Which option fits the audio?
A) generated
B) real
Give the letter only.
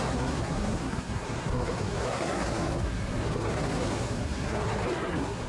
A